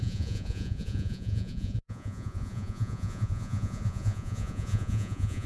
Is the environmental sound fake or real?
fake